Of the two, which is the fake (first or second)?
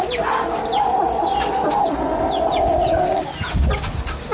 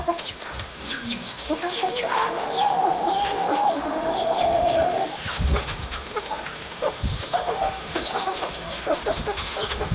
second